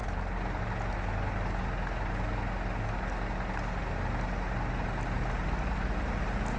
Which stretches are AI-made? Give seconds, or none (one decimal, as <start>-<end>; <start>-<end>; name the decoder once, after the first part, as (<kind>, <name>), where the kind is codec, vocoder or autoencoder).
none